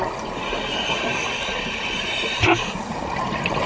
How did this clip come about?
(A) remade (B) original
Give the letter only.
B